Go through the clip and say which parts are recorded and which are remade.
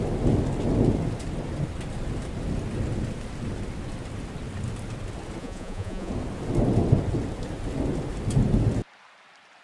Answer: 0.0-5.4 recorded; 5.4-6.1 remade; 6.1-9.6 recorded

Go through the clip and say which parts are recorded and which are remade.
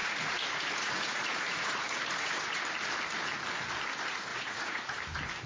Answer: 0.0-2.6 remade; 2.6-4.3 recorded; 4.3-5.0 remade; 5.0-5.5 recorded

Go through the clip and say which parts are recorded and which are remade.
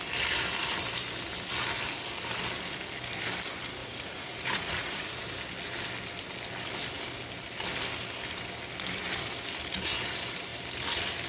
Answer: 0.0-3.8 recorded; 3.8-5.2 remade; 5.2-11.3 recorded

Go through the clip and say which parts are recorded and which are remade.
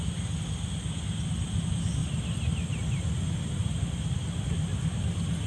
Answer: 0.0-5.5 recorded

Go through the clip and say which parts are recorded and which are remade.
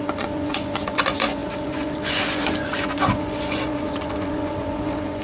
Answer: 0.0-5.2 remade